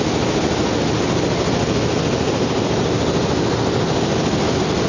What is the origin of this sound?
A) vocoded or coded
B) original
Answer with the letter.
B